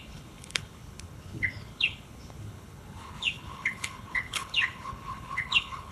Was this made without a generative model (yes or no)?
no